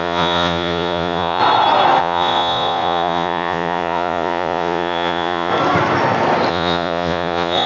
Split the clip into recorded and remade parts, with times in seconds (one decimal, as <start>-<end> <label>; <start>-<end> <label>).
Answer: 0.0-1.4 remade; 1.4-2.0 recorded; 2.0-5.5 remade; 5.5-6.5 recorded; 6.5-7.7 remade